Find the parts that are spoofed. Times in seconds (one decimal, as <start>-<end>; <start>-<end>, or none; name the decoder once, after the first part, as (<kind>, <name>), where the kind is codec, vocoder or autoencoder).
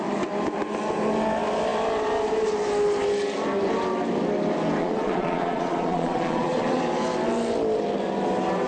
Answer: 4.8-6.8 (vocoder, Vocos)